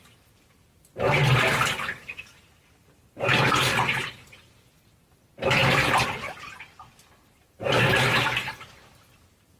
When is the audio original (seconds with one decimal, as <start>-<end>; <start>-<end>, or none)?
0.0-9.6